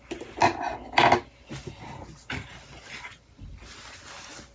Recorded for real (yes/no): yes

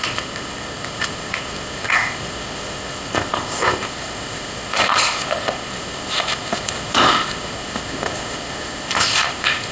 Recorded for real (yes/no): no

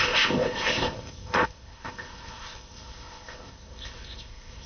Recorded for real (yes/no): no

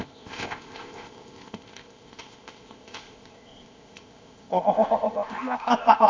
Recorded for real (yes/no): no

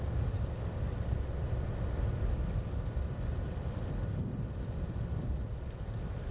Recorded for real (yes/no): yes